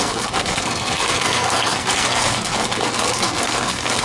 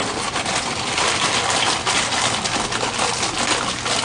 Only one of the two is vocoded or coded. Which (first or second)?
first